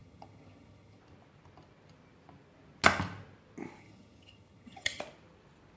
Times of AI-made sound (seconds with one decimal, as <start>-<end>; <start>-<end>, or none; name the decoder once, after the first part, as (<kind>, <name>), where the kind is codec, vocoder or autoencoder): 0.0-1.0 (vocoder, HiFi-GAN); 3.8-5.0